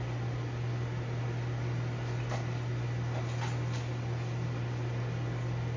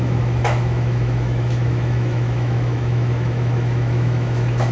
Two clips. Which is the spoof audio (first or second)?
second